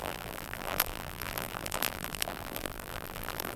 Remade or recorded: remade